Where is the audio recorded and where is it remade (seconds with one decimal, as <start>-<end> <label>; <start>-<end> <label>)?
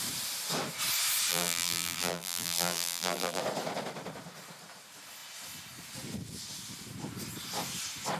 0.0-1.3 recorded; 1.3-3.4 remade; 3.4-8.2 recorded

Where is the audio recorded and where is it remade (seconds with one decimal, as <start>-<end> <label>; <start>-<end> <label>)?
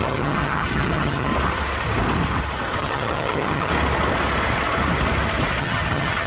0.0-1.3 remade; 1.3-2.8 recorded; 2.8-3.7 remade; 3.7-5.6 recorded; 5.6-6.3 remade